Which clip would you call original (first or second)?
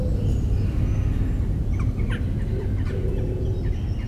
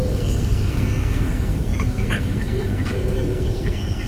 first